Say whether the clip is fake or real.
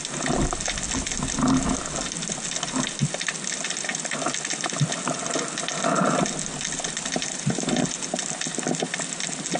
real